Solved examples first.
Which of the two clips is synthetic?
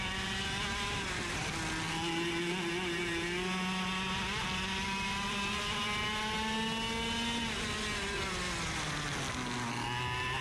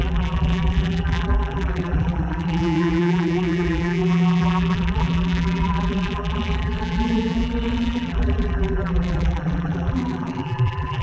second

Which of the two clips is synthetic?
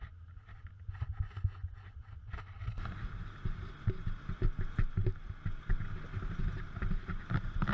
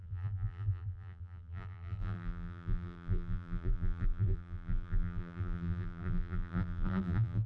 second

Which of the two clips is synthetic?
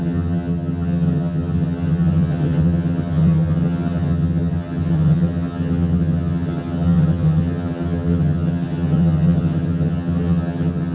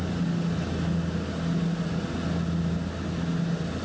first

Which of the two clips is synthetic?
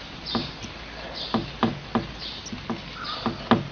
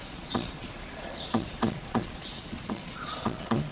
second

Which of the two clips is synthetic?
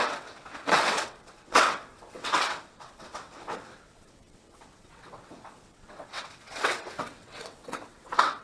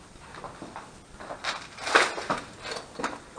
first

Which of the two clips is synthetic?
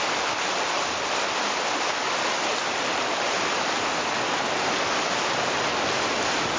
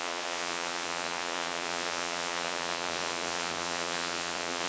second